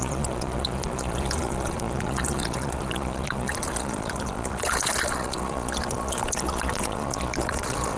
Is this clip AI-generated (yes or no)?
yes